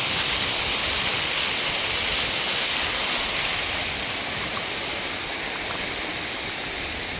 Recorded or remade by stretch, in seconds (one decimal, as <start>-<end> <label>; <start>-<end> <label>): 0.0-7.2 recorded